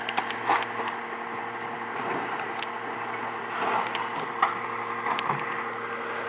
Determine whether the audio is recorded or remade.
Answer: recorded